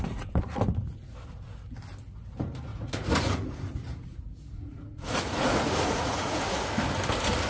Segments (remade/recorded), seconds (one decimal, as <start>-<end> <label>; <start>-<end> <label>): 0.0-2.7 recorded; 2.7-6.6 remade; 6.6-7.5 recorded